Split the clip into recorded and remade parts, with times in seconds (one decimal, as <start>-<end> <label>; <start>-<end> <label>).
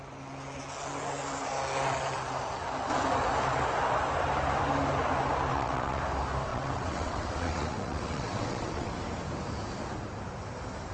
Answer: 0.0-5.5 recorded; 5.5-6.0 remade; 6.0-6.5 recorded; 6.5-8.9 remade; 8.9-10.9 recorded